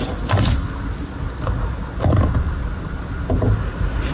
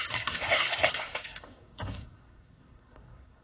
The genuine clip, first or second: first